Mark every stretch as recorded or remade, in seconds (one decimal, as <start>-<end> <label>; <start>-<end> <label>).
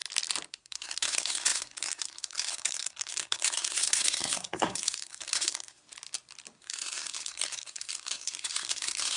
0.0-0.5 recorded; 0.5-5.8 remade; 5.8-6.6 recorded; 6.6-9.2 remade